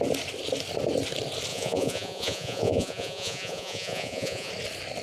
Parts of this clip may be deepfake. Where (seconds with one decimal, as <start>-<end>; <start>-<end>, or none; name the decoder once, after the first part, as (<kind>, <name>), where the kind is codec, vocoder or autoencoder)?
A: 1.5-4.5 (vocoder, Vocos)